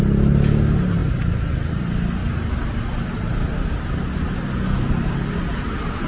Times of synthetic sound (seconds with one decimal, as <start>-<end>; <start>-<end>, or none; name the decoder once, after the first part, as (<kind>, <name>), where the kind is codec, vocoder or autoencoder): none